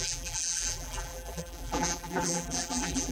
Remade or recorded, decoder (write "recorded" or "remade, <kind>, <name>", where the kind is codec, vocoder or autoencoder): remade, vocoder, BigVGAN v2